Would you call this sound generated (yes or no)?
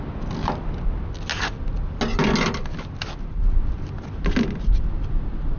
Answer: no